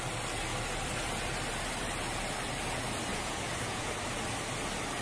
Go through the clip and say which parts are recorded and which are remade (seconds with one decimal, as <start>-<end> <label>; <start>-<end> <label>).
0.0-3.1 recorded; 3.1-3.9 remade; 3.9-5.0 recorded